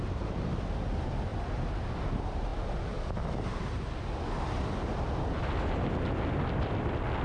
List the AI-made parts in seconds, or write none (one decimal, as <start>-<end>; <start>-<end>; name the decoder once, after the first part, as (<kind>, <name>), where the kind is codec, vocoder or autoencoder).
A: none